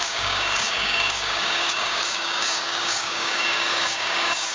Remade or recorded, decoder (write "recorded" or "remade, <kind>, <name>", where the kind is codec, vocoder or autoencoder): remade, codec, DAC